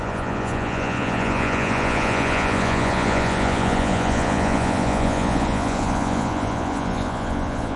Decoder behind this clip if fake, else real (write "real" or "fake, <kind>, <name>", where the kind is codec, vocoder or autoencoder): fake, vocoder, Vocos